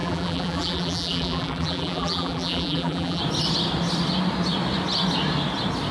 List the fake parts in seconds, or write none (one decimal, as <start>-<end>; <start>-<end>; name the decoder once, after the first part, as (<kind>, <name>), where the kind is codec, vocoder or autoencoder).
0.0-3.2 (vocoder, BigVGAN v2)